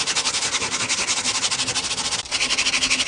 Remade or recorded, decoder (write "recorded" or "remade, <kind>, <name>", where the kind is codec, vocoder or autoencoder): recorded